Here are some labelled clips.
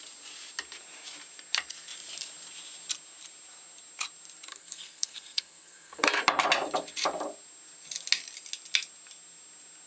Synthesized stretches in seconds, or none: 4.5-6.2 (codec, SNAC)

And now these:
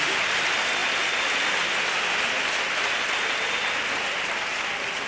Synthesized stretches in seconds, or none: none

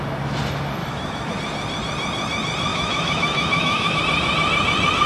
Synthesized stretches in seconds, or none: 0.8-1.3 (autoencoder, DAC-VAE); 2.7-4.0

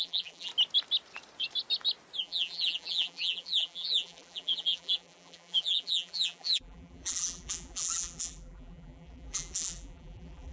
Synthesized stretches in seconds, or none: 0.0-0.5 (vocoder, BigVGAN v2); 2.2-10.5

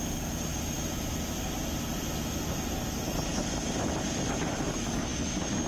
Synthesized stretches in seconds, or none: none